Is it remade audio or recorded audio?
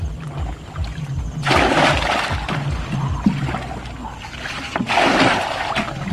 recorded